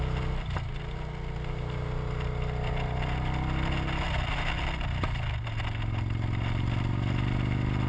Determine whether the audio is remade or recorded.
recorded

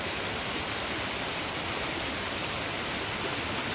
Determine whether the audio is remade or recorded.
recorded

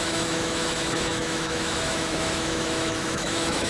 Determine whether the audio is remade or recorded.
remade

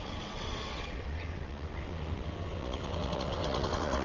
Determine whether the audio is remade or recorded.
remade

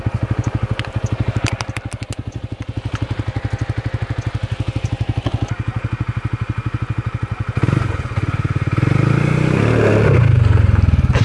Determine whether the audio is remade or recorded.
recorded